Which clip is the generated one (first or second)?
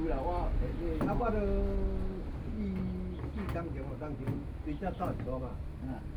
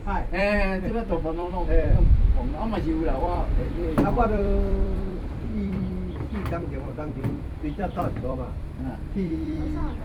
second